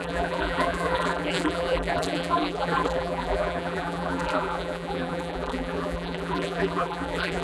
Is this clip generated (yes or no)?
yes